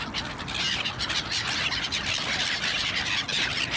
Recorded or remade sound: recorded